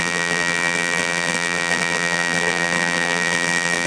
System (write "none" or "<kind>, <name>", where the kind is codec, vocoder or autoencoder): vocoder, BigVGAN v2